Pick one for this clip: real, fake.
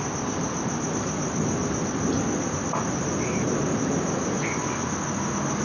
real